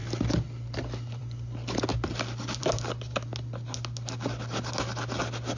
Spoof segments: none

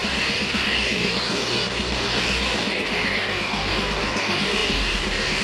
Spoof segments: 0.0-5.4

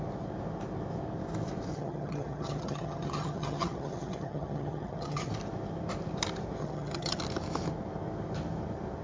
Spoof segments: 1.7-5.3; 6.6-7.2

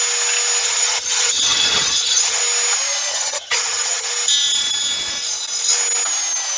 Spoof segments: 0.6-2.4; 3.1-4.1

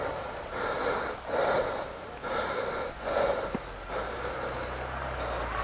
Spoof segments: 2.8-3.4